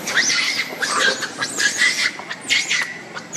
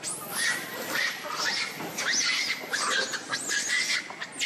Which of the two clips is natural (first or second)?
second